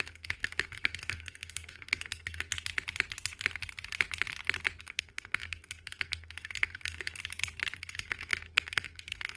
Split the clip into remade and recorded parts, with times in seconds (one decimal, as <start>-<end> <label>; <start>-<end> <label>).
0.0-2.5 remade; 2.5-4.8 recorded; 4.8-7.2 remade; 7.2-7.8 recorded; 7.8-9.4 remade